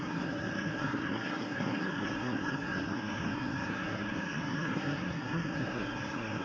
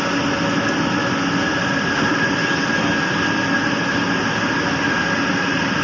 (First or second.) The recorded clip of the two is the second